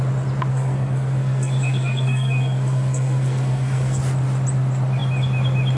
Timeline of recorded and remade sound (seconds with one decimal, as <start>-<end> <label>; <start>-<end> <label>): 0.0-0.5 recorded; 0.5-4.0 remade; 4.0-5.8 recorded